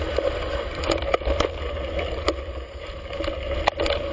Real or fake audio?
real